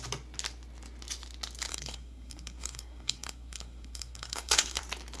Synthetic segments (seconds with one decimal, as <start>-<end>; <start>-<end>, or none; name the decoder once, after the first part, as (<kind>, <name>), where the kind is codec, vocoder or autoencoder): 1.7-4.8 (codec, SNAC)